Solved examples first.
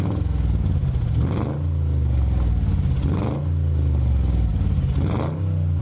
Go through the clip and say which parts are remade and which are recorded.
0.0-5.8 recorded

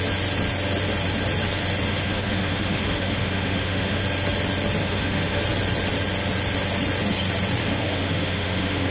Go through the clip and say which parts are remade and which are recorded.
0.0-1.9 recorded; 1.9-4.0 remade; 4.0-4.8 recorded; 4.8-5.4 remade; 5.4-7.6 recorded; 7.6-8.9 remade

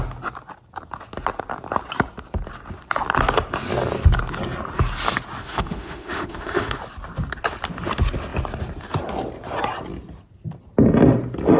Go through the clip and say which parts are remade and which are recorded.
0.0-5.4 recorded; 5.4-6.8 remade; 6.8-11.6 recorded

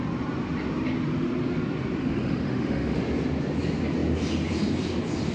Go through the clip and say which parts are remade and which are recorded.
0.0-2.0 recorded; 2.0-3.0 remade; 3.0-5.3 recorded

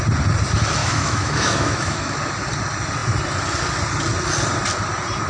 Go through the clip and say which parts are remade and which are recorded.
0.0-0.8 recorded; 0.8-2.2 remade; 2.2-5.3 recorded

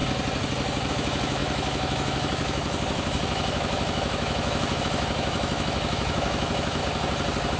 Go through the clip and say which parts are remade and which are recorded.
0.0-0.9 recorded; 0.9-6.8 remade; 6.8-7.6 recorded